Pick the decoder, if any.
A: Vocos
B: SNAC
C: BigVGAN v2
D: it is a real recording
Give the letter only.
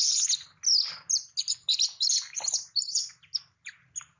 D